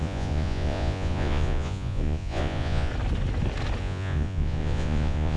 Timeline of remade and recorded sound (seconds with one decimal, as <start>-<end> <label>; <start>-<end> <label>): 0.0-2.9 remade; 2.9-3.8 recorded; 3.8-5.4 remade